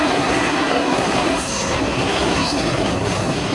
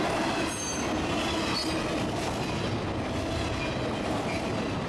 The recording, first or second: second